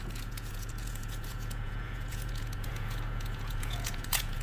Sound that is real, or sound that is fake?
fake